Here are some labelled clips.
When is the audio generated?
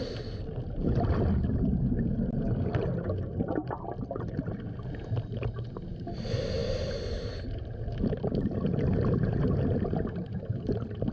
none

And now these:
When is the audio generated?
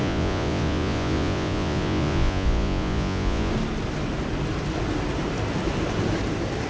0.0-3.5 (vocoder, Vocos)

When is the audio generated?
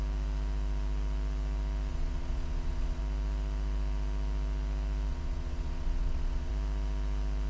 1.9-3.0 (vocoder, Vocos); 5.1-6.5